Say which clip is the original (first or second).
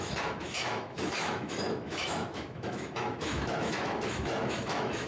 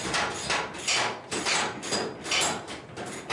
second